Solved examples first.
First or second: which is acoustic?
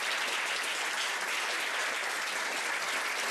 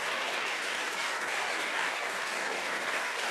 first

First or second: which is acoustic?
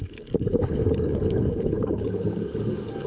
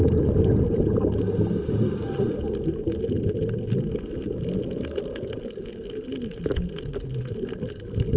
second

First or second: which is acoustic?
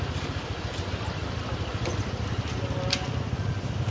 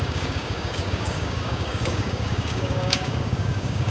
first